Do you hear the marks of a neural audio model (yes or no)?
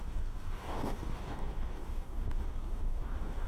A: yes